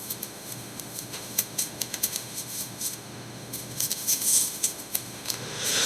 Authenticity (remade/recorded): remade